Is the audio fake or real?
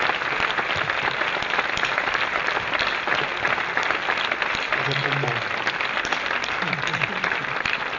real